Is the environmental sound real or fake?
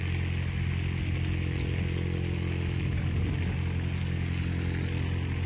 real